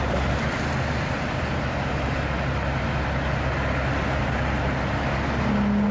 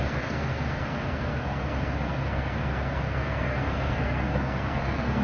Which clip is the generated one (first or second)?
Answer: second